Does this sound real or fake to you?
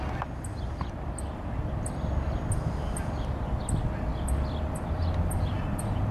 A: real